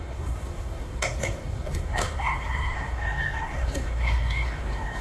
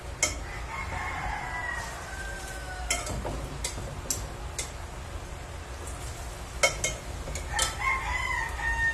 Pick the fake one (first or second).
first